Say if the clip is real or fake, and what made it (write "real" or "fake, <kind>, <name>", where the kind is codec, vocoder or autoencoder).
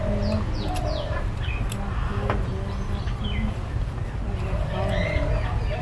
real